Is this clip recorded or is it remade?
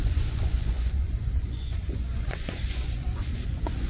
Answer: remade